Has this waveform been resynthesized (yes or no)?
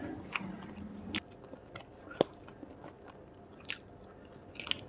no